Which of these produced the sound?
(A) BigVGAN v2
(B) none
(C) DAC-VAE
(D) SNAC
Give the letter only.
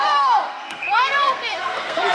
D